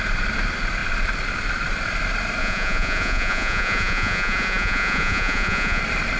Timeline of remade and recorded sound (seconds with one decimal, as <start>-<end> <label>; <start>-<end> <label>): 0.0-2.4 recorded; 2.4-5.8 remade; 5.8-6.2 recorded